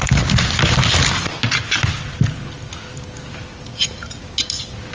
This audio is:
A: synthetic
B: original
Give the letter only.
B